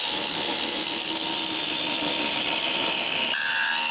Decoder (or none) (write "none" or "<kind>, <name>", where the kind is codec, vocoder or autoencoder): none